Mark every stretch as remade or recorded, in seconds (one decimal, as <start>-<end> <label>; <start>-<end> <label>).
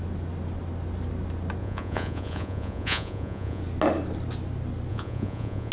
0.0-1.6 recorded; 1.6-3.6 remade; 3.6-4.9 recorded; 4.9-5.7 remade